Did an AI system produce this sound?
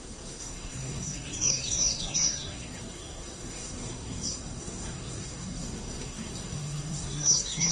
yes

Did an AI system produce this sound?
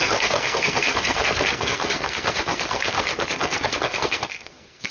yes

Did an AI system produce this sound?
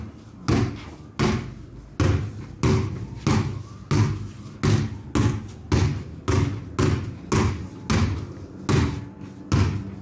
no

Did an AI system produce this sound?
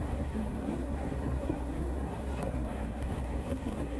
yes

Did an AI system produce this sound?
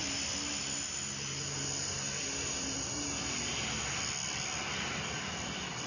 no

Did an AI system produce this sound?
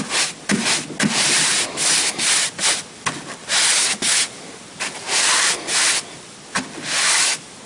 no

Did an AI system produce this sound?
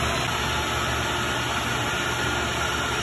no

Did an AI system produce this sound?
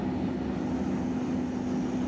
no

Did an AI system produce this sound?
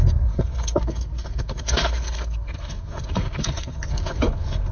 yes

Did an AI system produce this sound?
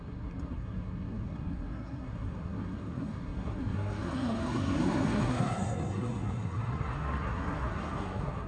yes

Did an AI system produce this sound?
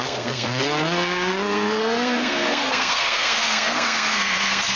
yes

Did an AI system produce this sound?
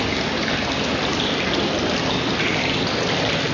no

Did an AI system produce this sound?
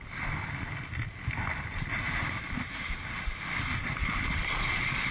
no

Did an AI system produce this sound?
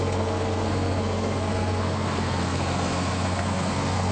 yes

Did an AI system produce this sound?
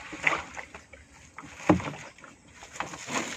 no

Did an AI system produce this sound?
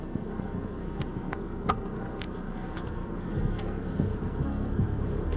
yes